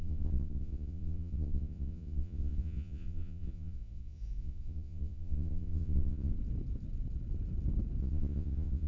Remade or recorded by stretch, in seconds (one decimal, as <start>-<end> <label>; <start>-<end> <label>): 0.0-6.3 remade; 6.3-8.0 recorded; 8.0-8.9 remade